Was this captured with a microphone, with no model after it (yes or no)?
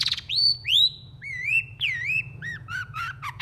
no